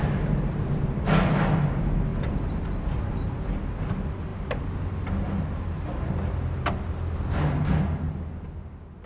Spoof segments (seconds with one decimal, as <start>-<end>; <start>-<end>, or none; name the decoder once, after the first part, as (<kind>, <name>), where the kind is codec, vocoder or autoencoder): none